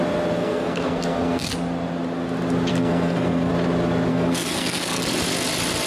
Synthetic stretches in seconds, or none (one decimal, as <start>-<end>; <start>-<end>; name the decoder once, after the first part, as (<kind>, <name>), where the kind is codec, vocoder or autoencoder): 0.4-1.5 (codec, SNAC); 2.7-3.5; 4.1-5.0